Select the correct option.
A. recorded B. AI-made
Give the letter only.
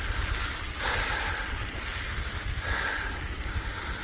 A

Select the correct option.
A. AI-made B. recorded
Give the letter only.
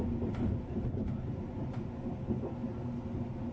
B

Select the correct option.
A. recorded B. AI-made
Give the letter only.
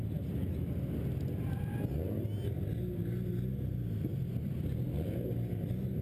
A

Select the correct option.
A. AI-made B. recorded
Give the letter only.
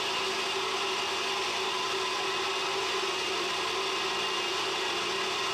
B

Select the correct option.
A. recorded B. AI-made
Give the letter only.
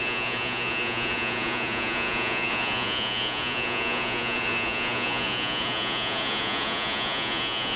B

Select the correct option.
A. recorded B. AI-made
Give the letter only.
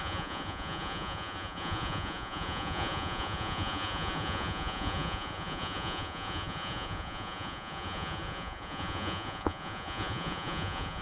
B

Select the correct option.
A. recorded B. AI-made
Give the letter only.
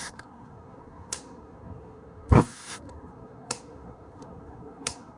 B